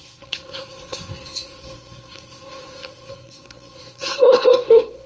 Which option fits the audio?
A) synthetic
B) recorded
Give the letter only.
A